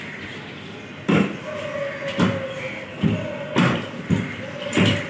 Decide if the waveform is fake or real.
real